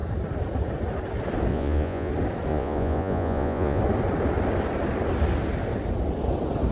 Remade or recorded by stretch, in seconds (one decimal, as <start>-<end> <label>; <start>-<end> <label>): 0.0-1.5 recorded; 1.5-2.1 remade; 2.1-2.5 recorded; 2.5-3.8 remade; 3.8-6.7 recorded